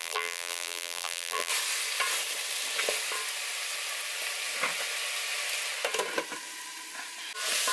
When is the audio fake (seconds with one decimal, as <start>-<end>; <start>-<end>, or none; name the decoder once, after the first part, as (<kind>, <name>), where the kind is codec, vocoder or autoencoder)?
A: 0.0-1.5 (vocoder, BigVGAN v2)